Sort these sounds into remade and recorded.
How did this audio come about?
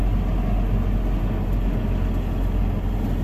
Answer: recorded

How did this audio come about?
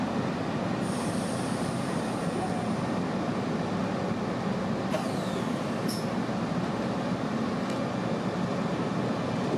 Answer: recorded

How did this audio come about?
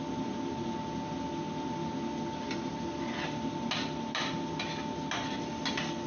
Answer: recorded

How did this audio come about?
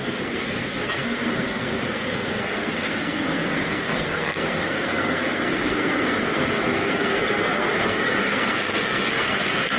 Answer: remade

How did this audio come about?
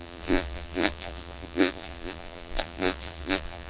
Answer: remade